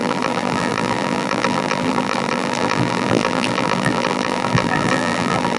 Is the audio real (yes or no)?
no